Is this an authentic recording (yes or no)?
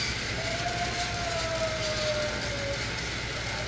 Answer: yes